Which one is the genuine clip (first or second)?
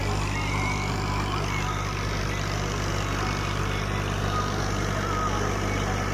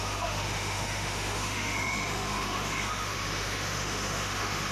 first